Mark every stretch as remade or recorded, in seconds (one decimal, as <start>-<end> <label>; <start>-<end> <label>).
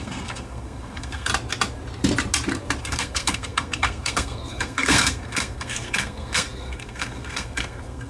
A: 0.0-1.3 remade; 1.3-2.8 recorded; 2.8-8.1 remade